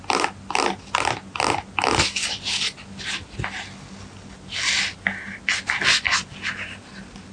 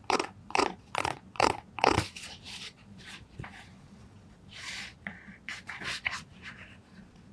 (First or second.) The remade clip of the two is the second